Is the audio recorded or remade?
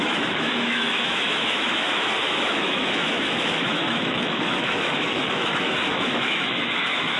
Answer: remade